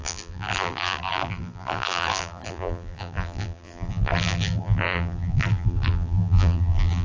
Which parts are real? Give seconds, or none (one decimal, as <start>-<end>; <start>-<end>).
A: none